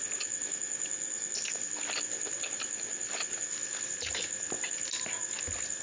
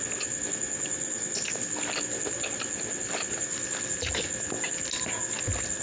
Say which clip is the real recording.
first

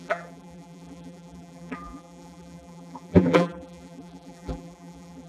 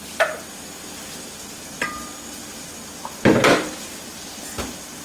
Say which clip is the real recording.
second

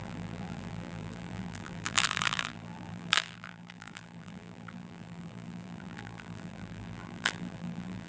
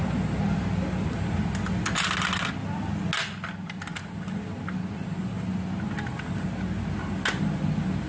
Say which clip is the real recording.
second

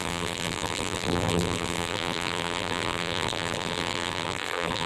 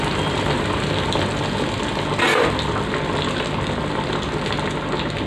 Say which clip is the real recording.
second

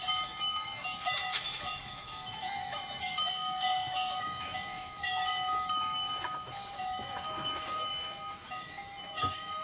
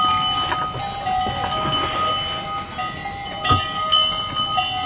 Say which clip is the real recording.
second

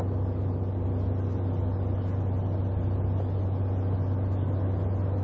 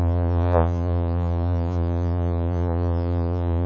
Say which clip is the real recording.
first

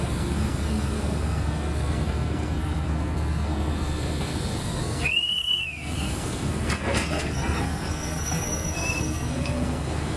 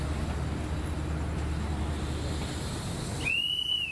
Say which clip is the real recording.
second